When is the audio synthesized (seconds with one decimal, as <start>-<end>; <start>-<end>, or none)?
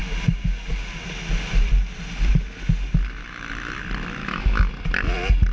3.2-3.8; 4.2-4.7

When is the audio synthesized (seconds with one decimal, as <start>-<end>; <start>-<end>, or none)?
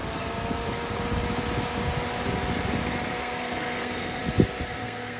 3.1-4.2; 4.8-5.2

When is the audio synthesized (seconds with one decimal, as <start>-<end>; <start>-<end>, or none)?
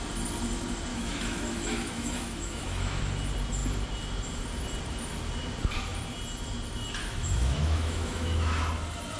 0.9-3.0; 7.0-8.6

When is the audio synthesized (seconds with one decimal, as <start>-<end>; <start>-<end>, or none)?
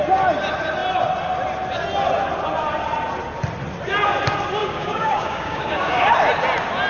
4.6-6.1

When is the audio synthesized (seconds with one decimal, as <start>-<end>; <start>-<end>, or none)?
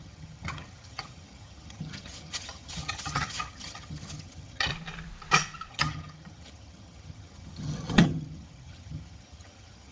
0.0-4.7; 5.7-9.9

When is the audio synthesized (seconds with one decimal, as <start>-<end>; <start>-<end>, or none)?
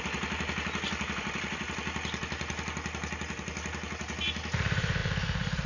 none